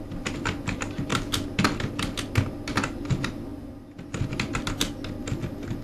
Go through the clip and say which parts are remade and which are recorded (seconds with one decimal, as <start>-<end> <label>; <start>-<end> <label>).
0.0-5.8 recorded